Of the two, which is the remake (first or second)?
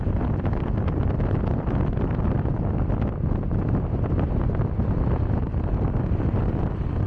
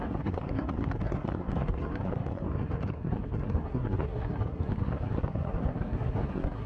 second